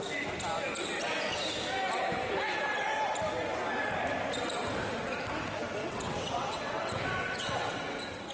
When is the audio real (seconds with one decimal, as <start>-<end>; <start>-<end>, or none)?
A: 0.0-5.8